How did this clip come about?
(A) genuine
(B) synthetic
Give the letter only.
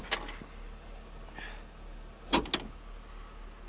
A